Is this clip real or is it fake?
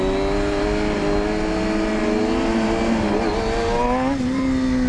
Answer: real